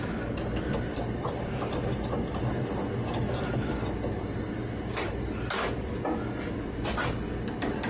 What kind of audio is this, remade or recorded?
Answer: recorded